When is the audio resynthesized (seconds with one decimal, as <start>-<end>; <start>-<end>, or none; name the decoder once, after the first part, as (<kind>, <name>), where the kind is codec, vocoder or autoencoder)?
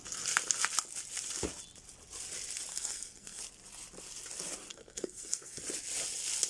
2.7-3.4 (codec, SNAC); 4.7-5.6